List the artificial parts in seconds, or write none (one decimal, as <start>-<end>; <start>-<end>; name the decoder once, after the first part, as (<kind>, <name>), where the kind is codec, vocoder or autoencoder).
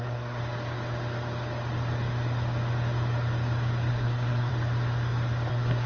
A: 0.0-0.4 (codec, SNAC); 3.9-4.5; 5.5-5.9